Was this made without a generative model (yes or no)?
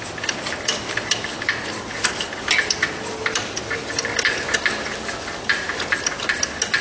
yes